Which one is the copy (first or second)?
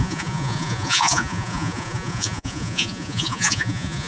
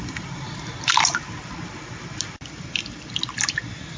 first